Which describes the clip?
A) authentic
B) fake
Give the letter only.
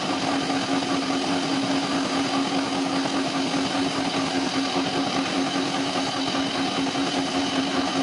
A